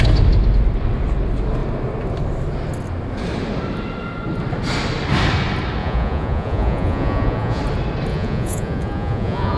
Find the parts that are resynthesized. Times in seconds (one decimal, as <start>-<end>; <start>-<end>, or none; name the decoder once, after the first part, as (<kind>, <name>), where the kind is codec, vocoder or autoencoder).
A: 5.8-7.6 (vocoder, Vocos); 8.1-9.6